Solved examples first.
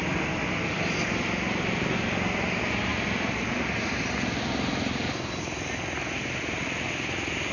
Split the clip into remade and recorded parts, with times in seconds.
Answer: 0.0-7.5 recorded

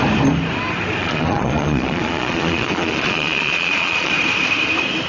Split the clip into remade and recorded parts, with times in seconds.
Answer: 0.0-1.0 recorded; 1.0-4.1 remade; 4.1-5.1 recorded

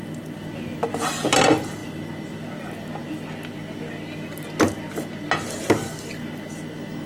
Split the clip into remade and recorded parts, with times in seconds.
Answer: 0.0-7.1 recorded

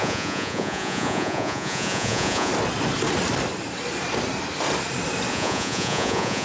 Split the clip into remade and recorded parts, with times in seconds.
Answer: 0.0-2.5 remade; 2.5-5.3 recorded; 5.3-6.4 remade